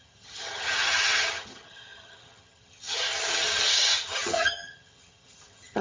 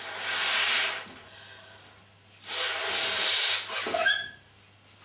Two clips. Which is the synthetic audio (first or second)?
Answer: first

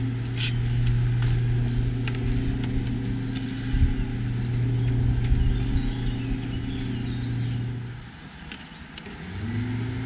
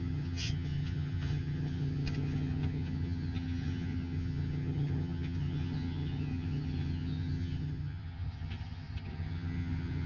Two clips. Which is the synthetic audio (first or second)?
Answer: second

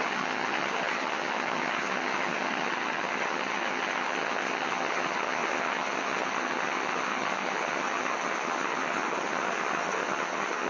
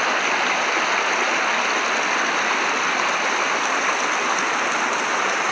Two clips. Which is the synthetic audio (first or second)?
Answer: first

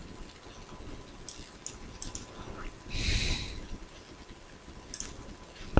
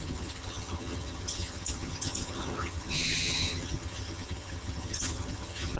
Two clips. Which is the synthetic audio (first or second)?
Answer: second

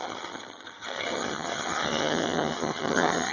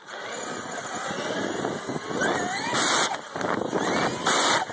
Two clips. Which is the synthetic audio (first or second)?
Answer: first